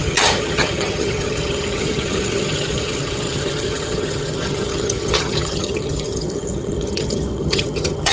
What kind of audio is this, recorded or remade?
remade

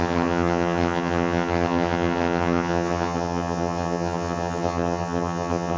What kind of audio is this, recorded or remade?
remade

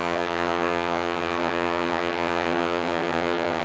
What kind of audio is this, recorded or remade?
remade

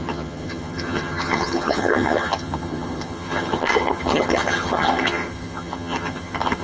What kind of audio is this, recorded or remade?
remade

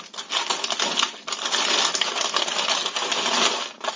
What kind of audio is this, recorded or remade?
recorded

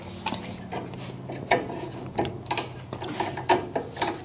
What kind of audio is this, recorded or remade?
recorded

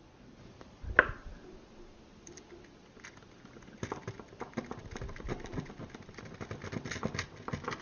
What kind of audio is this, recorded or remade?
recorded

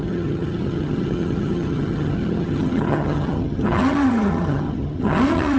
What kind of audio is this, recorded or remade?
remade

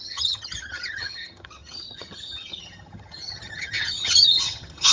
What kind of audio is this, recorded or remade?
remade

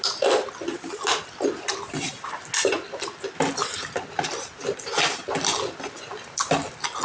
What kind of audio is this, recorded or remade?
recorded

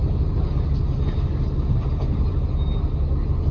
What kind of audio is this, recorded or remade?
recorded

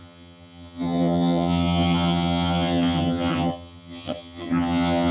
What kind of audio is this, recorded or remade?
remade